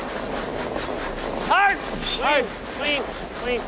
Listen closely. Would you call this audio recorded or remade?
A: recorded